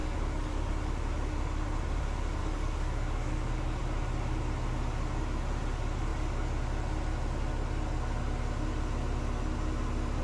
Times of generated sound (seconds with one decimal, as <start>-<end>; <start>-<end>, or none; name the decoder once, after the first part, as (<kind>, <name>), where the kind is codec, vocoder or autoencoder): 0.0-0.7 (codec, DAC); 2.4-3.8

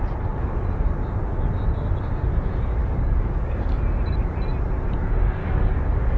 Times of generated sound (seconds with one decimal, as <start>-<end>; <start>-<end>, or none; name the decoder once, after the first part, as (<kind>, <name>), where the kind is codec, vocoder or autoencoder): 2.8-3.8 (codec, DAC); 5.4-6.2